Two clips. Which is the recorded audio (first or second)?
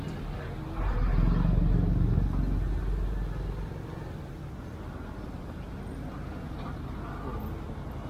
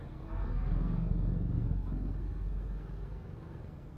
first